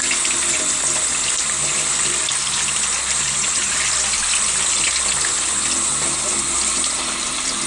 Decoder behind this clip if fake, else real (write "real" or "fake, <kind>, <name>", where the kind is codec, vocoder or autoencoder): real